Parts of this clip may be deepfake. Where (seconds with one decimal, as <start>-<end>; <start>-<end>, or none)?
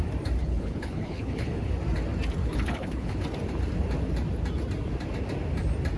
0.4-1.7; 2.4-3.2